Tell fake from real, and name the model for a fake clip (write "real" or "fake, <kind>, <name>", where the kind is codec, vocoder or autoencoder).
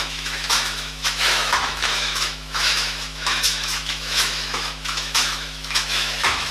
fake, autoencoder, DAC-VAE